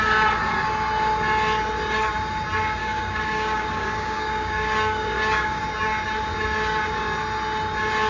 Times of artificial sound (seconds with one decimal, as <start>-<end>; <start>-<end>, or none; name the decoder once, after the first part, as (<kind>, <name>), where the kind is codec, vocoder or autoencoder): 2.8-5.6 (codec, DAC)

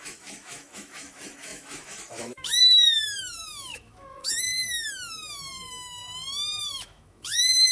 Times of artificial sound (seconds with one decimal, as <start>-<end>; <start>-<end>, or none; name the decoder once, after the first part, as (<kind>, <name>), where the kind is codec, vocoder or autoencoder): 0.0-6.0 (autoencoder, DAC-VAE); 6.6-7.7